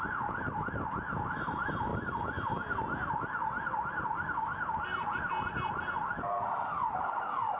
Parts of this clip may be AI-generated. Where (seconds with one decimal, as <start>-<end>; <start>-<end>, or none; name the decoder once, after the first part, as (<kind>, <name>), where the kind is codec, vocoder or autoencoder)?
none